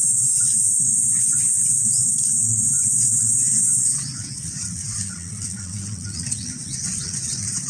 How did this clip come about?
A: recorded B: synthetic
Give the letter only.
B